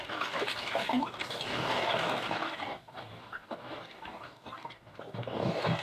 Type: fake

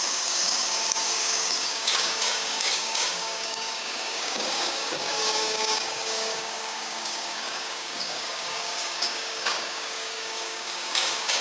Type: fake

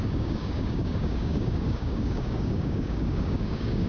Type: fake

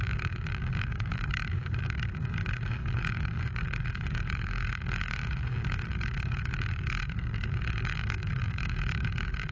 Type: fake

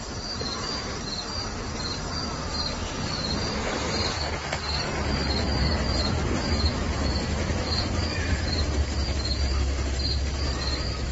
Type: real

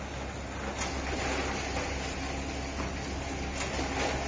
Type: real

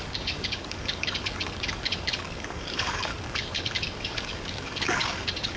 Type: fake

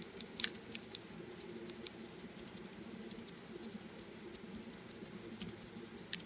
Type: real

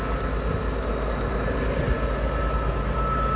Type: real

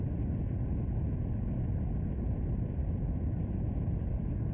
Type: real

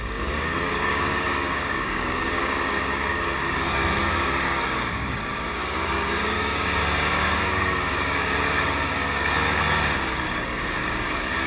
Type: fake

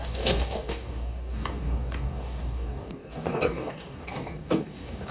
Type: fake